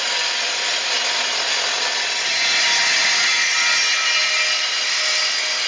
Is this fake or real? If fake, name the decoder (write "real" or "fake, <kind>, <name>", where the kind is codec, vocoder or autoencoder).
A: real